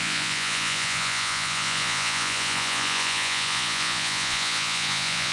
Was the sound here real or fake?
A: fake